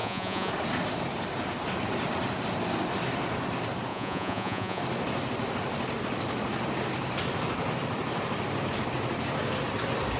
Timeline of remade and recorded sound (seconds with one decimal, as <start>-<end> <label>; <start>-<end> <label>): 0.0-0.5 remade; 0.5-3.9 recorded; 3.9-4.8 remade; 4.8-10.2 recorded